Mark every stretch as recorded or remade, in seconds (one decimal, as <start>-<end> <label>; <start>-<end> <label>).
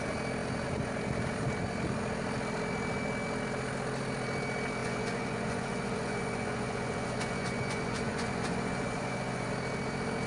0.0-4.8 recorded; 4.8-9.5 remade; 9.5-10.3 recorded